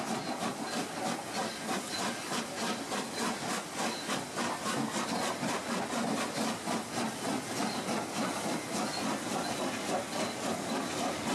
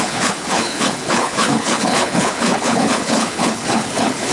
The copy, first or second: second